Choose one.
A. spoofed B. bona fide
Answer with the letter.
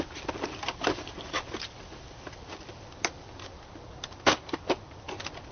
B